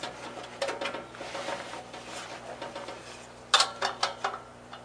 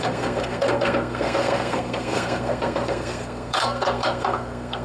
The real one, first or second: first